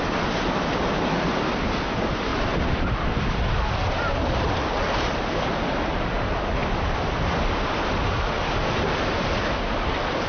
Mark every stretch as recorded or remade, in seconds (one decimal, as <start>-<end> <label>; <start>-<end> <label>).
0.0-2.3 recorded; 2.3-4.4 remade; 4.4-6.6 recorded; 6.6-9.4 remade; 9.4-10.3 recorded